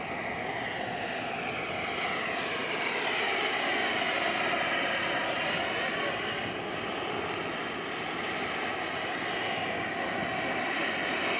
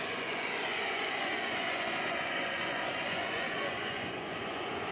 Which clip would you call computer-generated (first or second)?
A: second